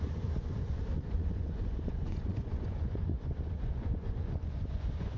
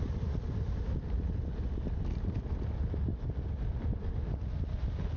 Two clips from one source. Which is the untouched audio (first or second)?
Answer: second